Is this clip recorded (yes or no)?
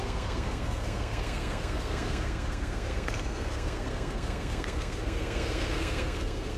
no